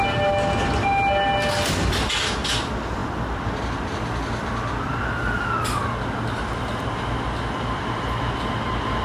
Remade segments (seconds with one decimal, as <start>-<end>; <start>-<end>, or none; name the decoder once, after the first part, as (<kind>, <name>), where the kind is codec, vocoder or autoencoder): none